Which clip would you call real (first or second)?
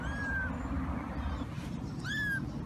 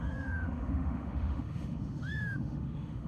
first